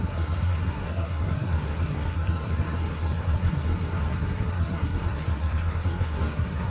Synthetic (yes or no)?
yes